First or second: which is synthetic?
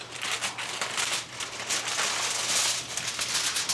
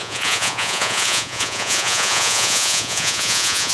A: second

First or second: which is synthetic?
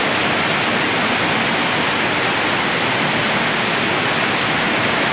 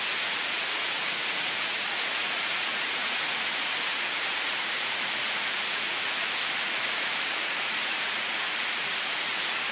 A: second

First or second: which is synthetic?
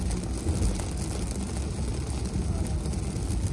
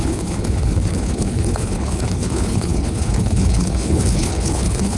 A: second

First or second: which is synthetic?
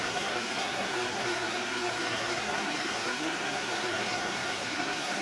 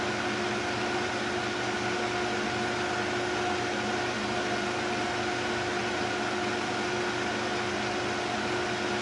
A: first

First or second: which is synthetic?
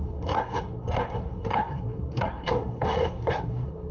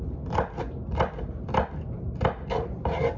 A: first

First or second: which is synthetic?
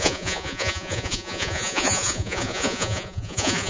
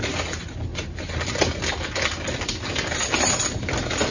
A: first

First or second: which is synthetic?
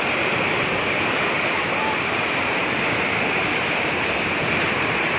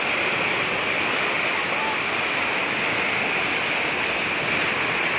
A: first